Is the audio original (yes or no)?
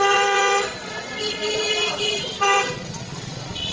no